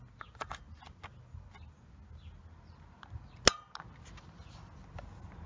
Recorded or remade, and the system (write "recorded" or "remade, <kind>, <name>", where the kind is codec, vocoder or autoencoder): recorded